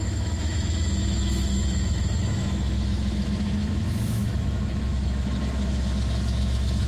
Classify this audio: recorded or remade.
remade